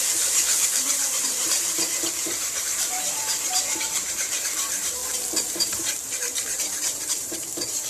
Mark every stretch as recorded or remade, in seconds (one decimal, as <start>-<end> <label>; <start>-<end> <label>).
0.0-5.0 remade; 5.0-5.5 recorded; 5.5-7.9 remade